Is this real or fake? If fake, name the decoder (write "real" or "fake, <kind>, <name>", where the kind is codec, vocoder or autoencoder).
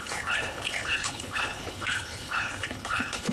fake, codec, HILCodec